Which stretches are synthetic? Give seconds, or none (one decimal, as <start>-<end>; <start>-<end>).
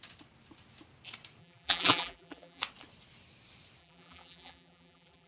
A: 1.4-2.6; 3.8-5.3